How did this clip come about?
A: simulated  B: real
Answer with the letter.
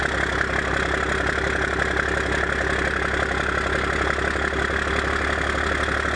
B